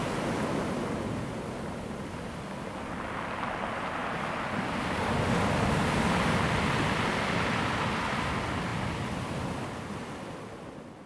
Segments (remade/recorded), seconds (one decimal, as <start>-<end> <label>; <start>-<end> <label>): 0.0-11.1 recorded